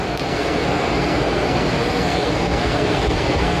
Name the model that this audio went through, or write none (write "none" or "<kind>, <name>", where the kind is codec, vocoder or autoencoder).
codec, SNAC